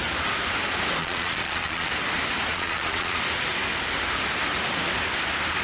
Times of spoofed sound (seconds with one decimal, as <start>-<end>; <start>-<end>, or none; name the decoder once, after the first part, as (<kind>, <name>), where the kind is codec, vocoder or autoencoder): 1.0-1.9 (vocoder, Vocos); 2.5-3.2